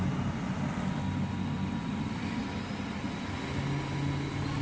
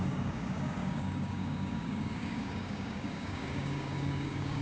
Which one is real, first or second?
first